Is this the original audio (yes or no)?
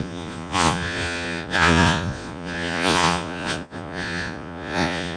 no